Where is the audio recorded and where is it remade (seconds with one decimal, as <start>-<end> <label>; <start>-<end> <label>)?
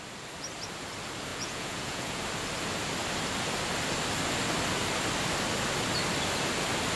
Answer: 0.0-1.3 recorded; 1.3-2.2 remade; 2.2-7.0 recorded